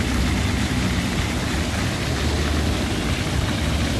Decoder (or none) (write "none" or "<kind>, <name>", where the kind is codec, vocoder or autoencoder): none